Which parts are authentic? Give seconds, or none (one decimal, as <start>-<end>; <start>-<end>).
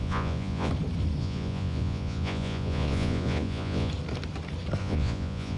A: 0.7-1.2; 3.9-4.8